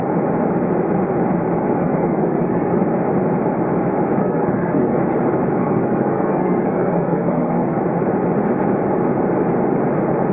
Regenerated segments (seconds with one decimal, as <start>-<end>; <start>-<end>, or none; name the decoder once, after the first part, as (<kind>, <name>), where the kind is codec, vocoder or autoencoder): 1.8-2.8 (codec, SNAC); 4.2-5.0; 5.6-7.8